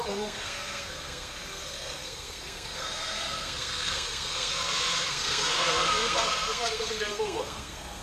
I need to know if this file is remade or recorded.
remade